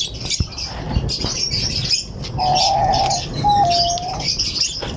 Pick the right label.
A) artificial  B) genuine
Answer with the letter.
B